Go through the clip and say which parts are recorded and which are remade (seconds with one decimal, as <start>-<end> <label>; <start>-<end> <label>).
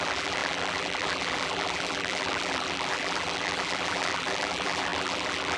0.0-5.6 remade